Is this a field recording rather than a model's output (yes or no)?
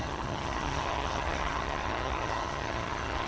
no